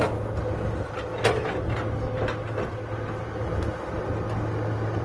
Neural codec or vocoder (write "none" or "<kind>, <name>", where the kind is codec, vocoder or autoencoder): none